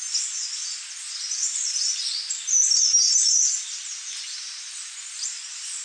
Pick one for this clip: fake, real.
real